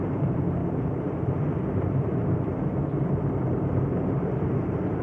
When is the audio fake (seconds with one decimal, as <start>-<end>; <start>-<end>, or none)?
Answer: 0.0-0.6; 3.6-5.0